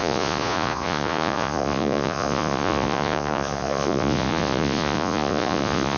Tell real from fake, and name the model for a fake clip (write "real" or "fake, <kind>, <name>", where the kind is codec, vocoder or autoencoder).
fake, vocoder, Vocos